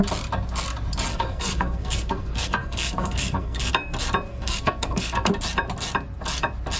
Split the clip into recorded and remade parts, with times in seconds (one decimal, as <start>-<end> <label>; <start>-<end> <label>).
0.0-1.1 recorded; 1.1-3.7 remade; 3.7-4.3 recorded; 4.3-5.3 remade; 5.3-6.8 recorded